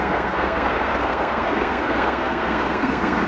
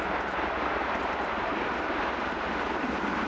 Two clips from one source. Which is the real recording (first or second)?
second